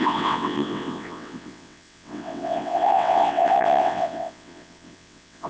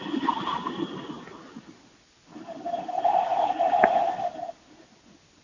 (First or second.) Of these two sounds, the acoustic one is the second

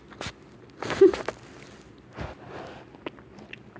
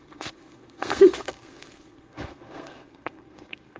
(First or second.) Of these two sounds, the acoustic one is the first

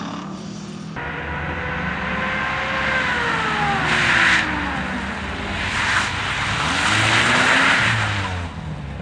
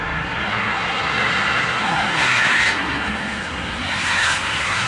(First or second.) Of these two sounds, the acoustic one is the first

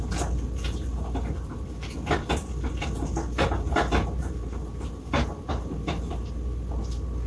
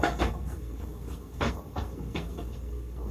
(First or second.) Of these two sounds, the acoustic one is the first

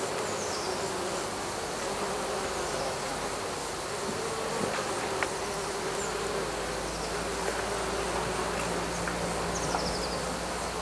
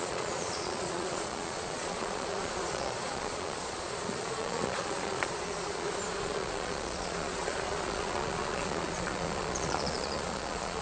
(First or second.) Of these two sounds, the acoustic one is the first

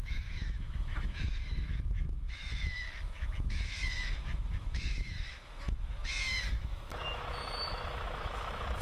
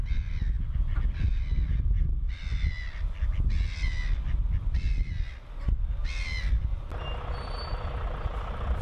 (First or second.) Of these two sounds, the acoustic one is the second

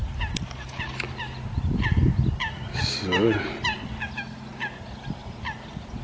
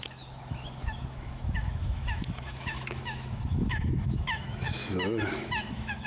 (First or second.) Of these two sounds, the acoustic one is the first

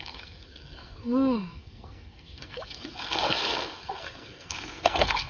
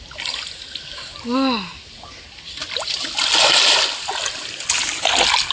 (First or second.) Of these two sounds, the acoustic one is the second